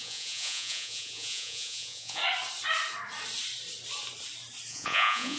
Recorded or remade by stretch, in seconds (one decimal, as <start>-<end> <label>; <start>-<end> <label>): 0.0-2.2 remade; 2.2-4.7 recorded; 4.7-5.4 remade